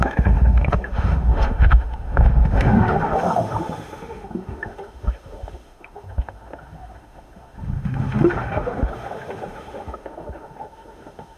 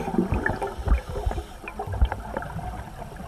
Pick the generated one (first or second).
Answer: first